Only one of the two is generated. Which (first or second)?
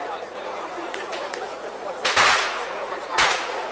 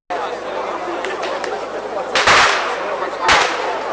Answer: first